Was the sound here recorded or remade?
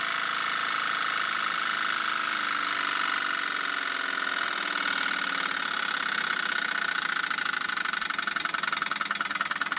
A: recorded